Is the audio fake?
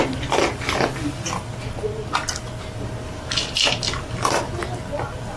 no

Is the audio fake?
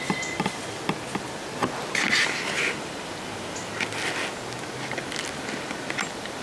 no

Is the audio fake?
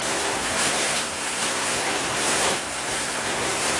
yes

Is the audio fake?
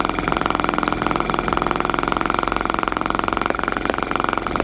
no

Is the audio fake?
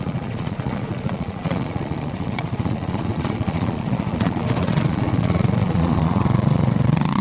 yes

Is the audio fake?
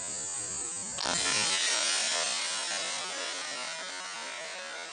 no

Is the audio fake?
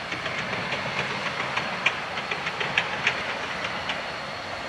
no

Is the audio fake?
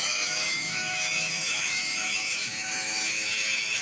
yes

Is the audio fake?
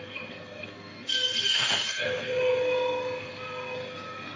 yes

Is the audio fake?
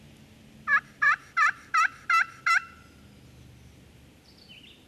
no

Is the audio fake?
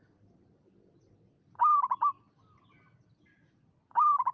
no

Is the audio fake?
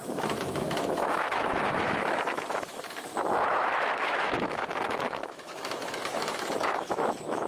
yes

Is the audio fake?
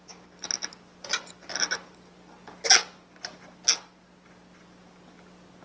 no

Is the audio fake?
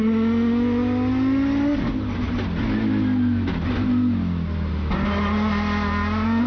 no